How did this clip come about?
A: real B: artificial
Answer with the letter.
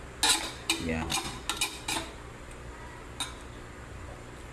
A